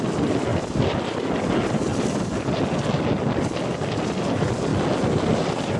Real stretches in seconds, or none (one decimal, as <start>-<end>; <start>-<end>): 0.0-5.8